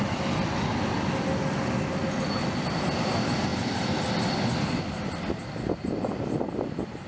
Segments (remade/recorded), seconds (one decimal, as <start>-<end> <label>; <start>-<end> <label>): 0.0-3.5 recorded; 3.5-4.8 remade; 4.8-7.1 recorded